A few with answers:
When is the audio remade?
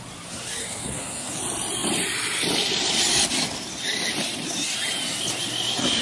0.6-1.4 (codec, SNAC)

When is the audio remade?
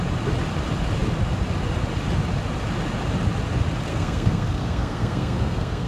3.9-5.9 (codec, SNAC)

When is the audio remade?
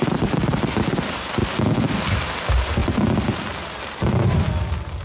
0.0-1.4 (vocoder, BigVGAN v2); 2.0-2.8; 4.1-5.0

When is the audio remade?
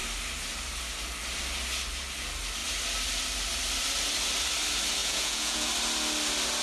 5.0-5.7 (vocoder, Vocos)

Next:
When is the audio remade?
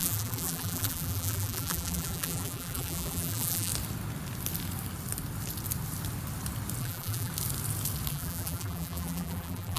0.0-3.7 (vocoder, BigVGAN v2); 6.8-7.3; 8.1-9.8